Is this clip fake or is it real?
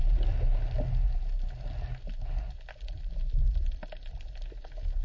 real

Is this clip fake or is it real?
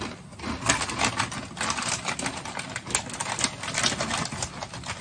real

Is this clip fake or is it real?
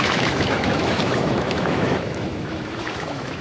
fake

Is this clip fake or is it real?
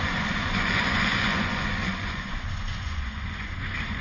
fake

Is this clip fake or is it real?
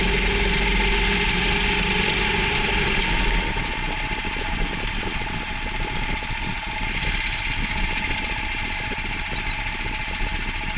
real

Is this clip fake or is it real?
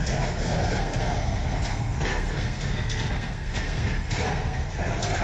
fake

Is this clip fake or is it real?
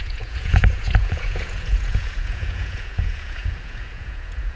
fake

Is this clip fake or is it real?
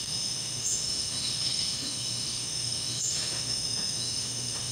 fake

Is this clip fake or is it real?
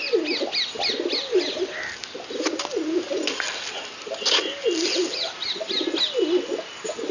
real